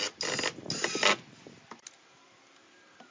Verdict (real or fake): real